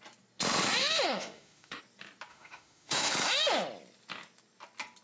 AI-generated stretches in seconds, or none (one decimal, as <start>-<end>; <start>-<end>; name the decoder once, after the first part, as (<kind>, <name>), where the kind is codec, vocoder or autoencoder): 0.8-1.8 (autoencoder, DAC-VAE); 2.3-3.1